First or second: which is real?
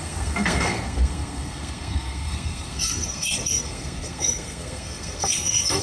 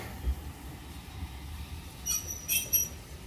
second